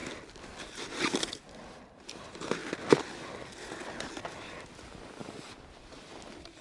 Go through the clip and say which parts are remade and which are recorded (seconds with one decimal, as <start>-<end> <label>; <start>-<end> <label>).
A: 0.0-0.8 recorded; 0.8-2.6 remade; 2.6-4.3 recorded; 4.3-5.2 remade; 5.2-5.8 recorded; 5.8-6.6 remade